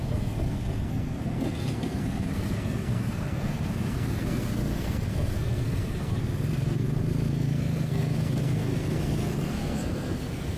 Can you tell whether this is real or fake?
fake